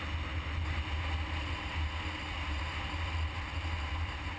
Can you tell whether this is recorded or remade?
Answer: recorded